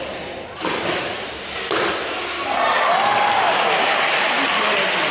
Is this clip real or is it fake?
real